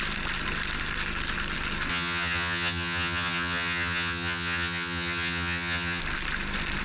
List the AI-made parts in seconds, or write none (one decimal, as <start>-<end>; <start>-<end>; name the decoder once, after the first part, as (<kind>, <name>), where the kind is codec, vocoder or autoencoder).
1.9-6.0 (vocoder, HiFi-GAN)